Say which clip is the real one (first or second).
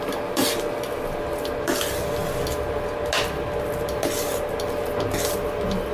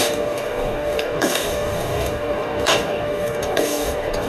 first